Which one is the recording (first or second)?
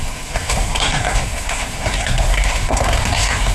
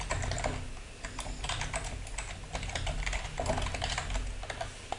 second